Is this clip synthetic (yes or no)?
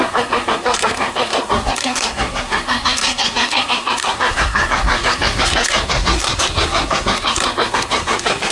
yes